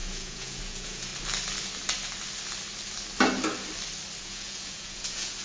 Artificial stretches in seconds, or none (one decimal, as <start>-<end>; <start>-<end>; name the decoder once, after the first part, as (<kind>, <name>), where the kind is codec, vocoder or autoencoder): 0.0-1.1 (vocoder, Vocos); 4.2-5.4